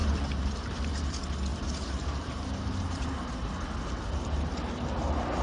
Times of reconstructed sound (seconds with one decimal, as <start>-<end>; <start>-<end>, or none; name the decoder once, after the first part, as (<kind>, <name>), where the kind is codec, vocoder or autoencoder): 0.0-1.1 (vocoder, BigVGAN v2); 1.5-3.5